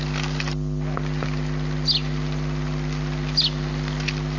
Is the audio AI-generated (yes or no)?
no